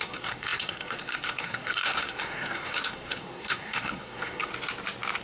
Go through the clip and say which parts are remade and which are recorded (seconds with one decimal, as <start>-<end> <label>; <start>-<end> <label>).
0.0-4.5 remade; 4.5-5.2 recorded